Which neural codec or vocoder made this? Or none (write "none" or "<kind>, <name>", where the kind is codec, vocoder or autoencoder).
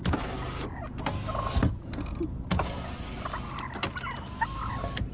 none